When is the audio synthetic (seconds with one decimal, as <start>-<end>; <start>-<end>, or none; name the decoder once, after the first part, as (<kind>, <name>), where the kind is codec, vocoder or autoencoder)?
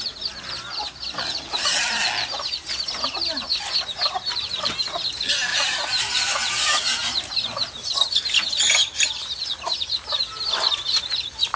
5.5-6.0 (vocoder, BigVGAN v2)